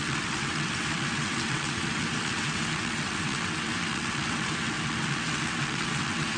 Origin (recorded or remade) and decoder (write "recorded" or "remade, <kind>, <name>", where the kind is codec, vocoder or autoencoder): remade, vocoder, WaveNeXt